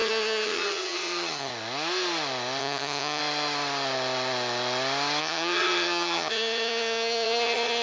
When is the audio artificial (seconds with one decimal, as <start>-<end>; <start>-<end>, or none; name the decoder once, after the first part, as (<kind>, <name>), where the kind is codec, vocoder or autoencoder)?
0.0-1.5 (vocoder, HiFi-GAN); 2.6-3.2; 5.2-7.8